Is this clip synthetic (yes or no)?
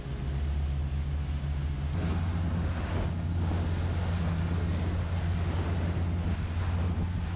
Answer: no